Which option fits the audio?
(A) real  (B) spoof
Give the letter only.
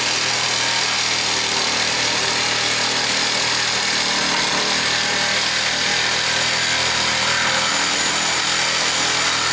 A